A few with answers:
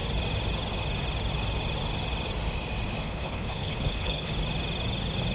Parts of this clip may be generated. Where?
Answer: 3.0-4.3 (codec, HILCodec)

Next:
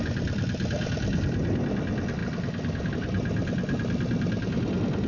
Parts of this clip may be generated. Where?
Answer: none

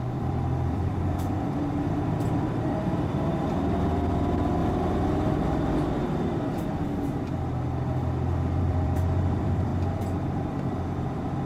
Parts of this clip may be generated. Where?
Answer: 0.0-4.6 (vocoder, BigVGAN v2); 8.6-9.7; 10.5-11.5

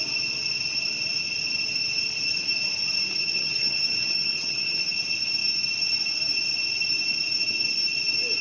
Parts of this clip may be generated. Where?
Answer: 3.2-4.8 (vocoder, HiFi-GAN)